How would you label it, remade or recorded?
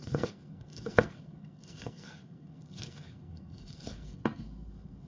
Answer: remade